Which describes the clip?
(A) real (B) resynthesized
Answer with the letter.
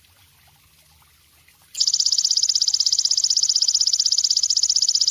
A